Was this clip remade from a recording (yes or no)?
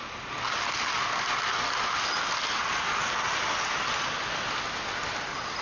no